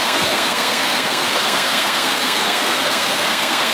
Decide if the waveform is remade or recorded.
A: remade